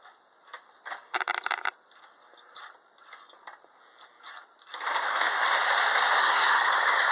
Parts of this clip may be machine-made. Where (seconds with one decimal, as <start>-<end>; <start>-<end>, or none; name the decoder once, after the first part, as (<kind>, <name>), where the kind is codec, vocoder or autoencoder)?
6.2-7.1 (codec, SNAC)